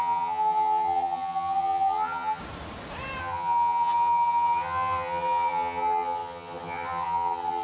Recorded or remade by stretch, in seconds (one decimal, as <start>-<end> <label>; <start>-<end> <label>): 0.0-2.4 remade; 2.4-3.2 recorded; 3.2-7.6 remade